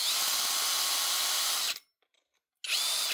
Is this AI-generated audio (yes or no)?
no